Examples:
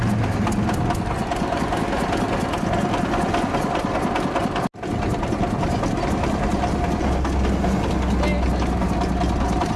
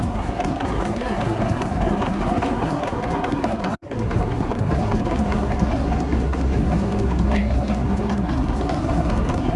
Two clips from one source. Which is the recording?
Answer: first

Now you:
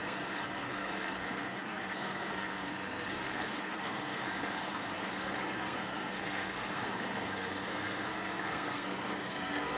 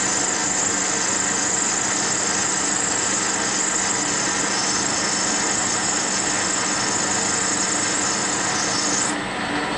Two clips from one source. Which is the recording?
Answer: second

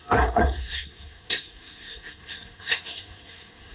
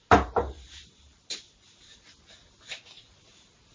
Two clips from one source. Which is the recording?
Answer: second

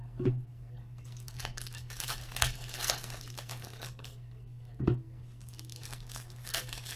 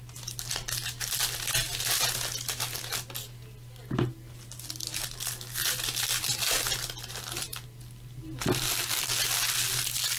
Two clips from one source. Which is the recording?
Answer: second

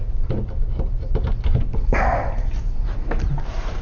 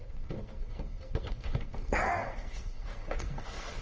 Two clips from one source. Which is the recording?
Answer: first